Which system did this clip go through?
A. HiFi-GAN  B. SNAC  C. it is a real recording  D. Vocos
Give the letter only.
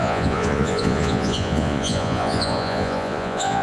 D